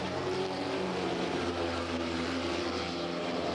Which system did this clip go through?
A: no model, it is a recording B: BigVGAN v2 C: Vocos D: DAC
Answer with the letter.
B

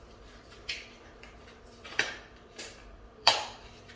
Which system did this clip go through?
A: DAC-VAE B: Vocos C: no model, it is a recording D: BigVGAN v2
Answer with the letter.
D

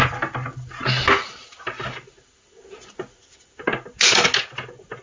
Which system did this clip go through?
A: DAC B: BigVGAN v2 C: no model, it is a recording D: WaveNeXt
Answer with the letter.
C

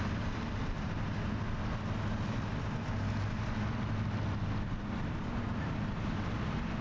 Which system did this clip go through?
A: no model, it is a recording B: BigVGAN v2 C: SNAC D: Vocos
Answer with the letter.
A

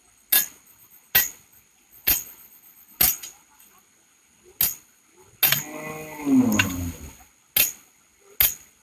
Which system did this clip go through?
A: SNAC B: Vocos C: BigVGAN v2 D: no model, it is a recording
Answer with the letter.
D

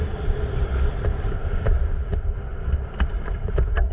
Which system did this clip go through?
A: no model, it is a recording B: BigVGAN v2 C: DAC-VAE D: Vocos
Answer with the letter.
B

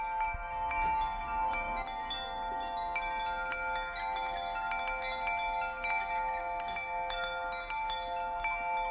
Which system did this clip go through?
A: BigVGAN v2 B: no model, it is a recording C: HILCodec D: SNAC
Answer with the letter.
B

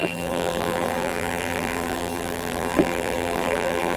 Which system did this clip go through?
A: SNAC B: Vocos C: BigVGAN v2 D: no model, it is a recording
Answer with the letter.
C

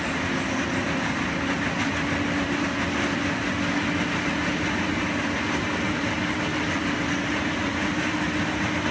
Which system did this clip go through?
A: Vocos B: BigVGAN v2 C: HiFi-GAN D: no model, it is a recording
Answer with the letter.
D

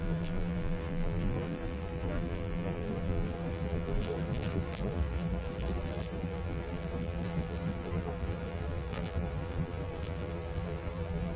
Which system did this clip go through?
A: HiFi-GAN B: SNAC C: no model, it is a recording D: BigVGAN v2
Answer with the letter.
D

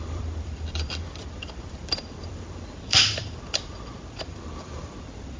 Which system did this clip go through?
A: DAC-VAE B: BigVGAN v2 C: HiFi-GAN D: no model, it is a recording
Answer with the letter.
B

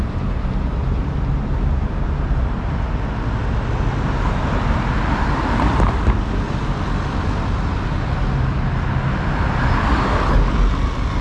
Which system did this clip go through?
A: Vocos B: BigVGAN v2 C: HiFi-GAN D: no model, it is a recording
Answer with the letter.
D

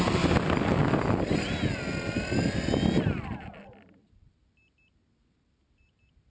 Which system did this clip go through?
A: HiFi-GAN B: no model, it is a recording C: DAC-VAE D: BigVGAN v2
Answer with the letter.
B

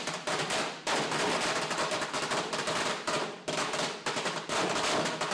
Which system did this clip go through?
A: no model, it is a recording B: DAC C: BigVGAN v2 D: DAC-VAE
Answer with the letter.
C